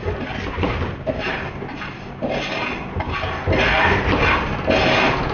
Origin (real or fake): real